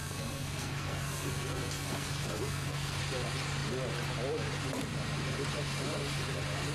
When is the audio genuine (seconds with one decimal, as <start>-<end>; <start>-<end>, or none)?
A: 3.0-6.7

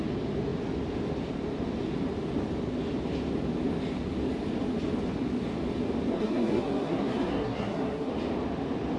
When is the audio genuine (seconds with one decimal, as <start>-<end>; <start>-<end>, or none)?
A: 0.0-6.1; 8.1-9.0

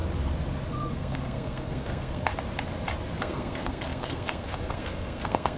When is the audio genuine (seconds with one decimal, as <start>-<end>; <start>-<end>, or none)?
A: 0.0-0.7; 2.3-3.2

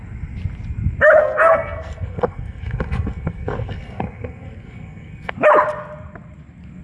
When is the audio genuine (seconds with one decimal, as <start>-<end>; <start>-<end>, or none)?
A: 0.0-1.2; 5.3-6.8

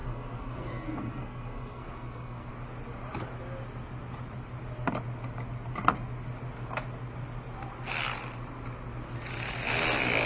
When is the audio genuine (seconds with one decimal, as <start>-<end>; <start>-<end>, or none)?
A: 2.5-10.3